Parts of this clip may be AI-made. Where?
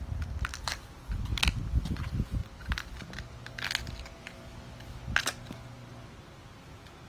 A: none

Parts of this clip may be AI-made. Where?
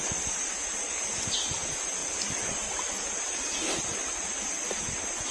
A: none